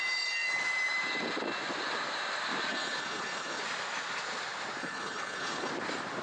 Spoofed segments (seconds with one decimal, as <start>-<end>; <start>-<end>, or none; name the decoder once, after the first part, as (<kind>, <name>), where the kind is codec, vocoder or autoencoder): 2.7-3.6 (codec, HILCodec); 4.8-5.7